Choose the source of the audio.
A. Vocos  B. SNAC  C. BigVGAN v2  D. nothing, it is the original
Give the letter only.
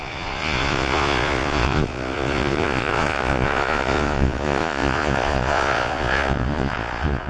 A